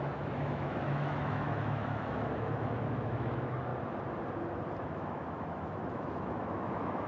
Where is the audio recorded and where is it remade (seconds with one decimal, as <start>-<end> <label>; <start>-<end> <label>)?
0.0-3.7 remade; 3.7-4.8 recorded; 4.8-7.1 remade

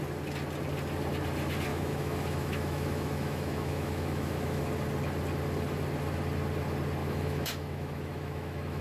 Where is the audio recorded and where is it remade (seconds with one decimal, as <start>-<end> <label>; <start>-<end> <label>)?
0.0-1.7 recorded; 1.7-4.6 remade; 4.6-7.0 recorded; 7.0-8.8 remade

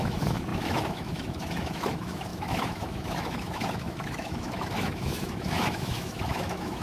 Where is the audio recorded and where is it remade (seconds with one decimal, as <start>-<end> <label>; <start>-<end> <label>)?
0.0-6.8 remade

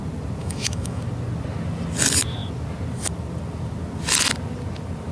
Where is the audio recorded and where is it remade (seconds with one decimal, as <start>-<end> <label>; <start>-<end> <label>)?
0.0-0.4 recorded; 0.4-1.0 remade; 1.0-5.1 recorded